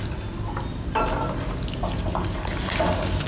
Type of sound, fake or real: real